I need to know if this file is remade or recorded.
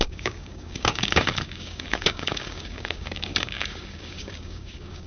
remade